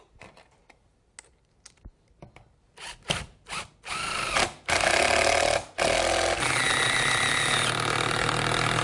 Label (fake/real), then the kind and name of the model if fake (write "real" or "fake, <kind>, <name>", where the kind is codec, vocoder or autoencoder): real